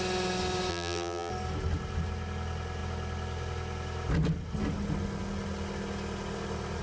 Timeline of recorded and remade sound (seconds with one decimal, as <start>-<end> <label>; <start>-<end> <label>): 0.0-0.7 recorded; 0.7-1.3 remade; 1.3-6.8 recorded